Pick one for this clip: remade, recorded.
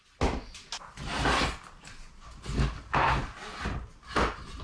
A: recorded